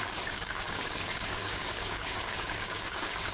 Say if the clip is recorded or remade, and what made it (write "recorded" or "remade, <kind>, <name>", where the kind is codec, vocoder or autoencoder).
remade, codec, DAC